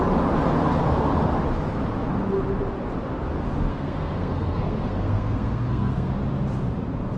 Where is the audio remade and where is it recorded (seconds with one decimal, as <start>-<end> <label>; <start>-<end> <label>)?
0.0-3.7 recorded; 3.7-6.2 remade; 6.2-7.2 recorded